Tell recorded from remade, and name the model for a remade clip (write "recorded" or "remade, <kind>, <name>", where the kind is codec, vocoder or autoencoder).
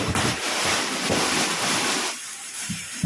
remade, vocoder, BigVGAN v2